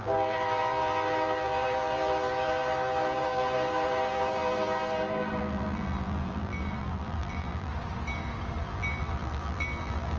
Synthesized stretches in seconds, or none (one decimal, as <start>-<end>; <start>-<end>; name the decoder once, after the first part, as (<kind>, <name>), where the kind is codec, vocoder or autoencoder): 0.0-7.7 (vocoder, BigVGAN v2); 8.6-10.2